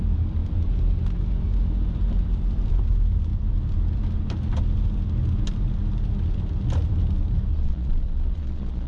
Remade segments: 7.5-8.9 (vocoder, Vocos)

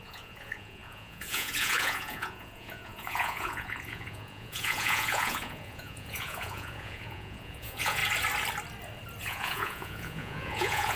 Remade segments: 0.0-8.0 (vocoder, Vocos); 9.2-11.0

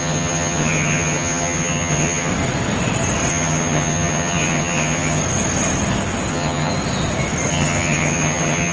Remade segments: 0.0-2.3 (vocoder, HiFi-GAN); 3.3-5.2; 6.3-6.7; 7.5-8.7

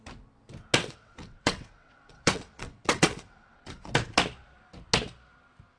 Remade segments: 0.8-3.9 (vocoder, WaveNeXt)